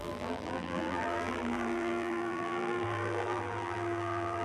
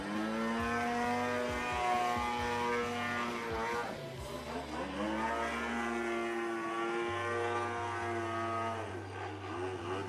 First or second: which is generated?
first